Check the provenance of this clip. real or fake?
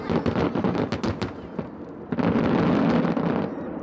real